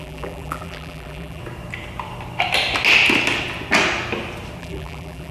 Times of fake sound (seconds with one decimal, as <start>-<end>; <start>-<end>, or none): 0.0-1.4; 4.6-5.3